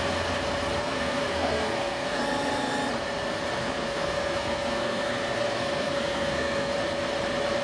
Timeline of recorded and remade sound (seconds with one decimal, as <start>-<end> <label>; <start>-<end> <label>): 0.0-0.8 recorded; 0.8-2.2 remade; 2.2-3.6 recorded; 3.6-6.7 remade; 6.7-7.6 recorded